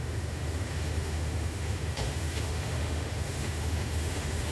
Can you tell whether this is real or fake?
fake